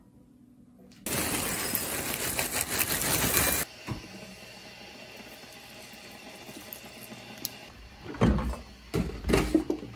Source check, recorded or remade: recorded